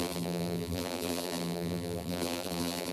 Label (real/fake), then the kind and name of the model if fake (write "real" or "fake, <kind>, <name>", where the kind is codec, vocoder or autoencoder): fake, vocoder, BigVGAN v2